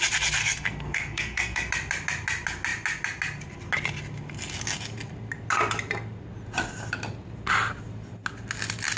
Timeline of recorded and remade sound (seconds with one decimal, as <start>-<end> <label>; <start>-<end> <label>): 0.0-0.4 recorded; 0.4-1.7 remade; 1.7-9.0 recorded